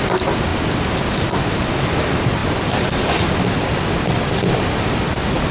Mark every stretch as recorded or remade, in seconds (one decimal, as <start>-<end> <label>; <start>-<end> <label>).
0.0-5.5 recorded